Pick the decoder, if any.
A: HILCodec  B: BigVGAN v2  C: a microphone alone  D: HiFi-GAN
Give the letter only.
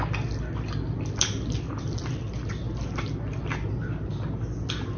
C